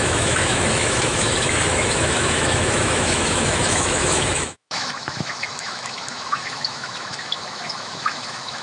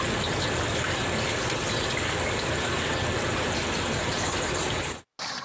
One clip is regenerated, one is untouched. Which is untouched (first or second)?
second